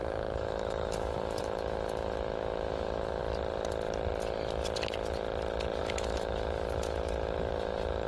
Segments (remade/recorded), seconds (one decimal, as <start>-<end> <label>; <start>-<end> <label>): 0.0-3.2 remade; 3.2-5.8 recorded; 5.8-8.1 remade